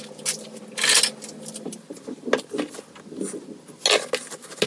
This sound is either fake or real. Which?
real